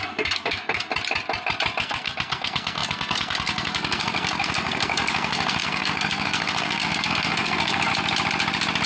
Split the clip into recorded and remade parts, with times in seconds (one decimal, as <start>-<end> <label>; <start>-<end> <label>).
0.0-0.9 remade; 0.9-1.8 recorded; 1.8-7.9 remade; 7.9-8.9 recorded